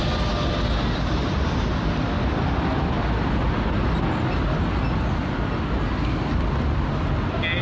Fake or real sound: real